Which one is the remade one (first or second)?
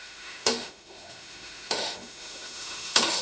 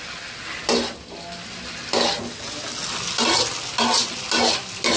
first